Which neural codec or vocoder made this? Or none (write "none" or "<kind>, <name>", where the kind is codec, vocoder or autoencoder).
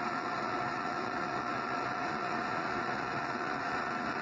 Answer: vocoder, Vocos